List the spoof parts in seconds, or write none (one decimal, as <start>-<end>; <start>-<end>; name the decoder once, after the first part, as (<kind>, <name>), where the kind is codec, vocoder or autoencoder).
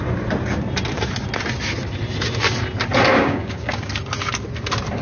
3.1-3.9 (codec, DAC)